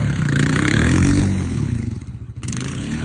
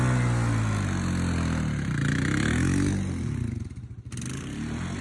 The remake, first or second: first